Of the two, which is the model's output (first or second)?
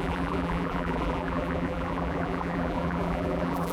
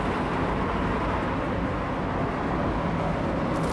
first